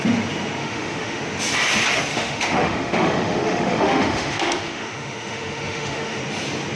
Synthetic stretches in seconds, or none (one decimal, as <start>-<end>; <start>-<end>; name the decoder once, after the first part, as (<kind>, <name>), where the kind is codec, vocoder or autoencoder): 0.6-1.2 (autoencoder, DAC-VAE); 2.1-6.2